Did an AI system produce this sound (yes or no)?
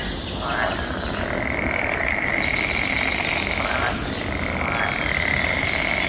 no